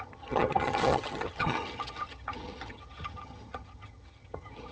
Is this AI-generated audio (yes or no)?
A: yes